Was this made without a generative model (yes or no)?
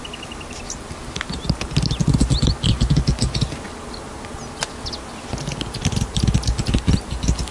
yes